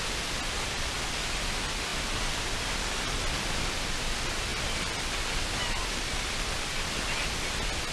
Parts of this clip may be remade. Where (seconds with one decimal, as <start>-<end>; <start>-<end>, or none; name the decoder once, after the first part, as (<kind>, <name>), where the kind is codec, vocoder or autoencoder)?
none